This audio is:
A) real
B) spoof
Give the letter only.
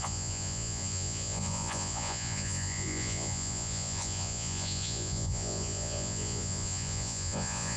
B